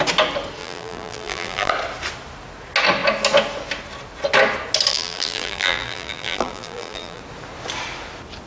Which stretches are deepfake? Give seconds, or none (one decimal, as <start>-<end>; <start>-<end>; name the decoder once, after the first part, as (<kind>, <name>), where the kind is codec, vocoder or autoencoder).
0.6-1.7 (vocoder, BigVGAN v2); 4.9-7.2